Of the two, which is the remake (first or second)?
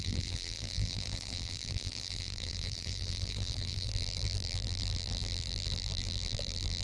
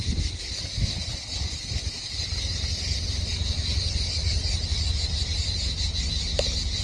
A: first